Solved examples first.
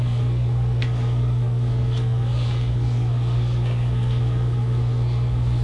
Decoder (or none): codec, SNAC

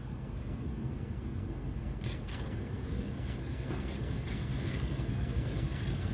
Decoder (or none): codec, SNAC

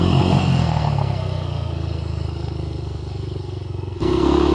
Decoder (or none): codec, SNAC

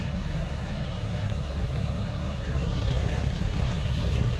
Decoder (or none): codec, SNAC